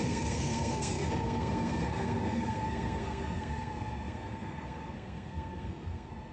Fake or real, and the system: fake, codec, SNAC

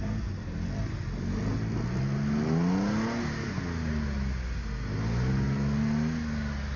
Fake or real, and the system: real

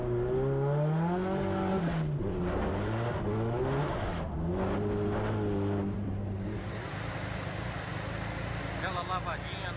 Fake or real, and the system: real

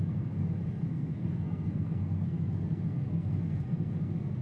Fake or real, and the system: fake, codec, SNAC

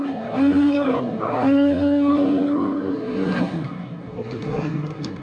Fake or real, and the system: fake, codec, SNAC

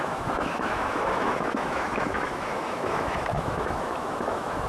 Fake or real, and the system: fake, autoencoder, DAC-VAE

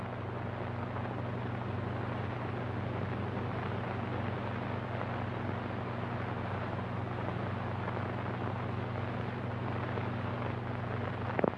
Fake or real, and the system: real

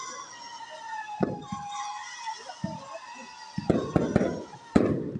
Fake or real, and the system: real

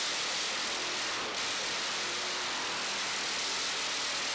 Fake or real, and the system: real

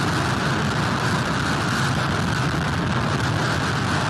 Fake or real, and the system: real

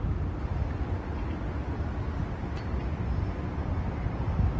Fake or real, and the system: real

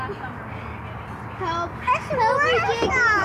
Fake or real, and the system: real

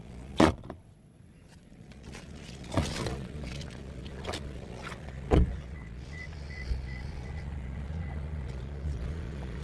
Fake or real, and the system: fake, vocoder, Vocos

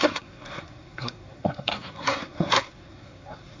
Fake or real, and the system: fake, codec, SNAC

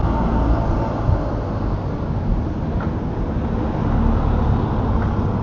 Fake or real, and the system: real